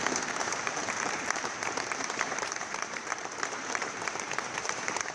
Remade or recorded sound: remade